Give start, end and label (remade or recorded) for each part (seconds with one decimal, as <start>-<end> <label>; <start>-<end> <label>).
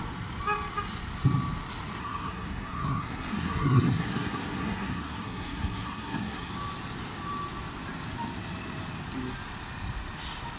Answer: 0.0-2.0 recorded; 2.0-6.5 remade; 6.5-10.6 recorded